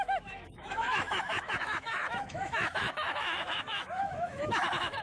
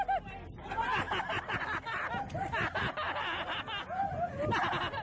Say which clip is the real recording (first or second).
second